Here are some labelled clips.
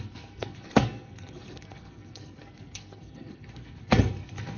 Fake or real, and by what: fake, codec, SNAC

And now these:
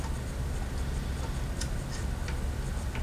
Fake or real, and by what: real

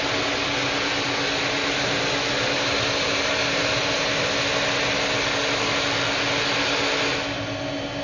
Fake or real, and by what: real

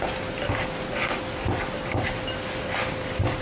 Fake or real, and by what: real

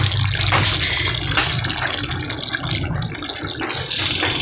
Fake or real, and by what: real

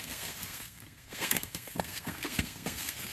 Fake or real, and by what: fake, codec, SNAC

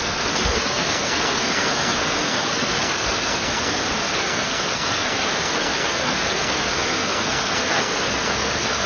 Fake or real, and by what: fake, codec, SNAC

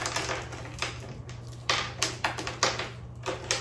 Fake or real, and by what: real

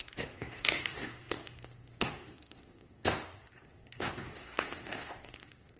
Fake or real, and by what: fake, codec, SNAC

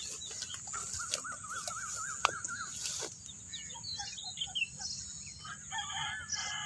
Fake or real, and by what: real